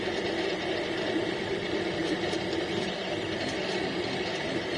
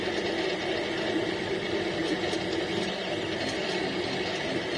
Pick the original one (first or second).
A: second